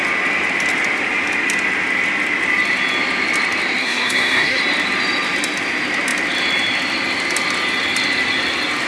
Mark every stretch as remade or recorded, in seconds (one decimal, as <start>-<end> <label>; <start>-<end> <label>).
0.0-3.8 recorded; 3.8-4.6 remade; 4.6-8.9 recorded